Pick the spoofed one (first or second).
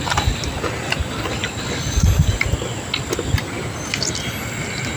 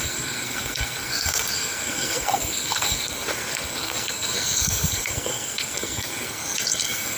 second